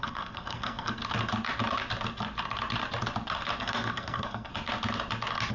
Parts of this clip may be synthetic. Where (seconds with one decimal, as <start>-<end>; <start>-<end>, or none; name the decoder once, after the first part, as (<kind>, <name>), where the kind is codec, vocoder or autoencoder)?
0.0-1.0 (codec, SNAC); 3.6-4.5